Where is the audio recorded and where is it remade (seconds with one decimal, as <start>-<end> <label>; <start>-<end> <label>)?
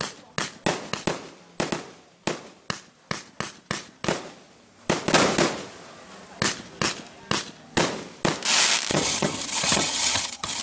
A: 0.0-8.9 recorded; 8.9-10.6 remade